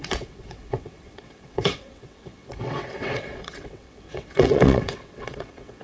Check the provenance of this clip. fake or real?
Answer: fake